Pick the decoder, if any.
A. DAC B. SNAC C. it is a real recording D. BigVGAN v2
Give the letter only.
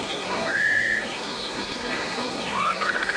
B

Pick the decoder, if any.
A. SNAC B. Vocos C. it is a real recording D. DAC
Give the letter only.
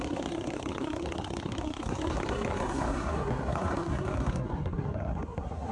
A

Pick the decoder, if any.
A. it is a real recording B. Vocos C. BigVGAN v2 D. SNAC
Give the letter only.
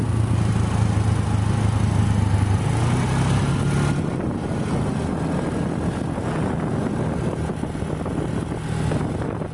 A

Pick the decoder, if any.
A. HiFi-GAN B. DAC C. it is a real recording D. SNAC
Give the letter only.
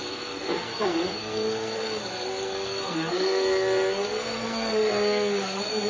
D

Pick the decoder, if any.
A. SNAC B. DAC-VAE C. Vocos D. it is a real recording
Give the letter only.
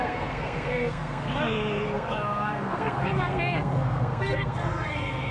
A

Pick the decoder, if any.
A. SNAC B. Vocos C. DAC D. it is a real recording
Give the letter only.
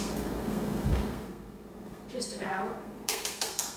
A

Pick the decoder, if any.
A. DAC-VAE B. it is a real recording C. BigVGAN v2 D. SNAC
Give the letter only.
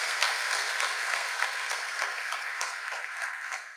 D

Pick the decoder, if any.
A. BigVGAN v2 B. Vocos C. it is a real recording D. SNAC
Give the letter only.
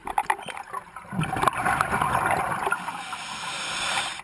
C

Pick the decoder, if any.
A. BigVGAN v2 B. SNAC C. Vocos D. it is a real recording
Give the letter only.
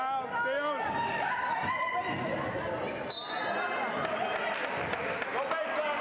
D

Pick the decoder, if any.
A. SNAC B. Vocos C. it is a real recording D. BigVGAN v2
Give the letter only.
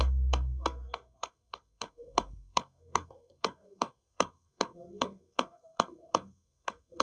A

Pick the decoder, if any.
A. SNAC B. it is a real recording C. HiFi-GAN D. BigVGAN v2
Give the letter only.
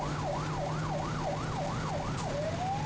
B